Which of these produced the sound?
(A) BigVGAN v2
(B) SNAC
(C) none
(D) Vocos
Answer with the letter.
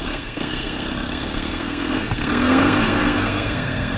B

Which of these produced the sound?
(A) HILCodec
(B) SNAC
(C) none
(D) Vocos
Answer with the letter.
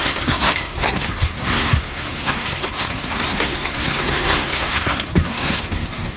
B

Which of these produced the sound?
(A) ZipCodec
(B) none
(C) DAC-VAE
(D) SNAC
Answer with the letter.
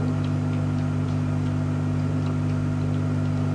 B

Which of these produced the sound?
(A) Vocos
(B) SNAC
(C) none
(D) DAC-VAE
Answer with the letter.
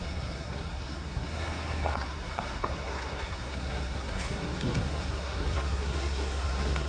B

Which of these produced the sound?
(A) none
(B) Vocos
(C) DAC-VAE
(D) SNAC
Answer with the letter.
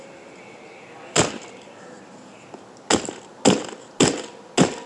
A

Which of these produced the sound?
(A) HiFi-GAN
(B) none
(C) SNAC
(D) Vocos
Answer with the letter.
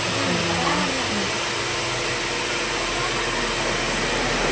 B